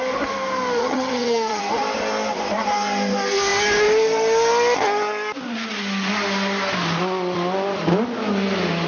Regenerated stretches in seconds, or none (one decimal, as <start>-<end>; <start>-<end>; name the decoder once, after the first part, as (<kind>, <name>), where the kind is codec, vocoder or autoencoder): 0.8-1.6 (vocoder, HiFi-GAN)